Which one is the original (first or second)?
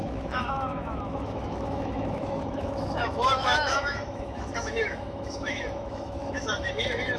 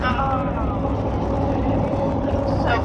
second